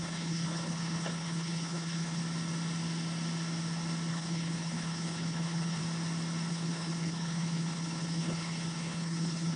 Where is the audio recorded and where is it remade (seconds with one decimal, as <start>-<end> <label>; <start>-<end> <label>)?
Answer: 0.0-2.2 remade; 2.2-4.1 recorded; 4.1-5.8 remade; 5.8-6.5 recorded; 6.5-9.6 remade